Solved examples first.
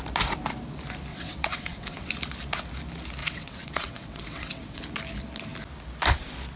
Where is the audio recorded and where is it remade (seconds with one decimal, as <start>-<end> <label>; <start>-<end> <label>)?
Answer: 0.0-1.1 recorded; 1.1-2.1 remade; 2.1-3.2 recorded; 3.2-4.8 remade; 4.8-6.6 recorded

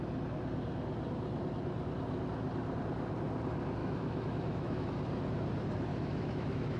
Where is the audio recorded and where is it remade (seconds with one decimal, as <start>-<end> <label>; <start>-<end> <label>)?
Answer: 0.0-3.8 recorded; 3.8-4.9 remade; 4.9-5.9 recorded; 5.9-6.8 remade

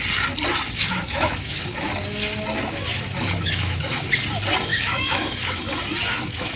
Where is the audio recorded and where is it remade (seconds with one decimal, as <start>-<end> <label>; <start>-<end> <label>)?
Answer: 0.0-0.8 recorded; 0.8-1.9 remade; 1.9-2.9 recorded; 2.9-4.1 remade; 4.1-4.7 recorded; 4.7-5.6 remade; 5.6-6.0 recorded; 6.0-6.6 remade